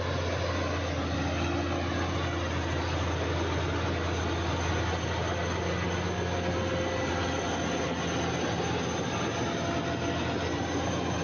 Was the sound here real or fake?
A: real